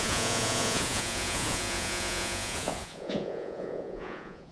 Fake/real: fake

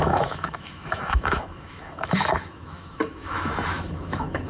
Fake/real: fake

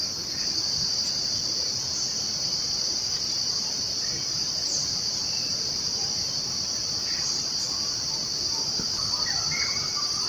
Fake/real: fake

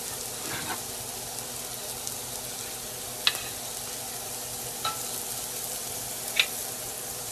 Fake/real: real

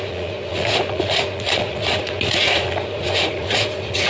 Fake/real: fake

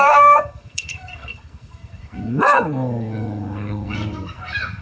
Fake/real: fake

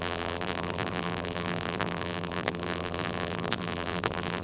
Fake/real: fake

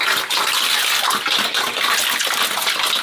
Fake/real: real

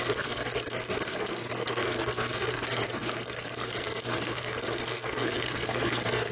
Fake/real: fake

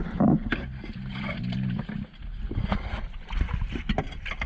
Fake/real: real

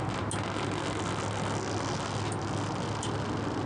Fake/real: real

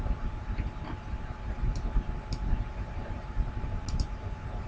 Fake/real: fake